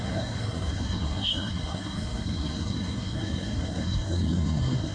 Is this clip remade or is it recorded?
remade